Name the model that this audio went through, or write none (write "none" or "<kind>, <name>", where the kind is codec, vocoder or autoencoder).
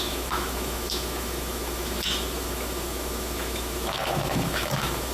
autoencoder, DAC-VAE